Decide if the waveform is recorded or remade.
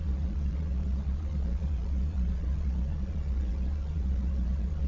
remade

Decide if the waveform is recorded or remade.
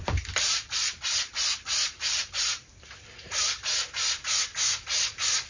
recorded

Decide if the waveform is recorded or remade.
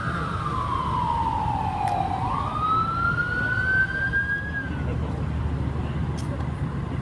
recorded